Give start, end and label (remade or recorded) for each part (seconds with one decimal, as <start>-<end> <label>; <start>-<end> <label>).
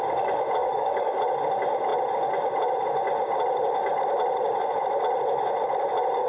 0.0-0.6 recorded; 0.6-1.2 remade; 1.2-6.3 recorded